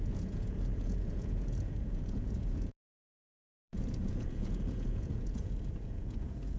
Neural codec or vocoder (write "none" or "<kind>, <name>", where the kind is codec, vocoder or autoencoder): vocoder, Vocos